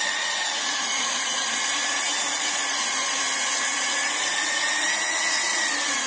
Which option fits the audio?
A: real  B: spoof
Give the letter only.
B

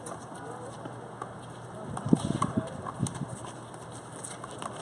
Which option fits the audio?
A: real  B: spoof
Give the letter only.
A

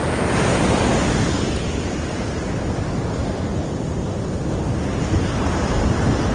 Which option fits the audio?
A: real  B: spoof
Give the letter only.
A